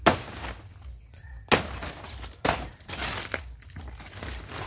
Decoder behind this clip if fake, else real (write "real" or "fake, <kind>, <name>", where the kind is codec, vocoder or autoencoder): real